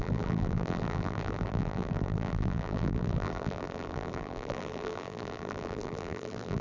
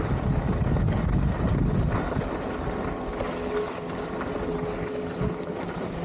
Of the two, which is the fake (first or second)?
first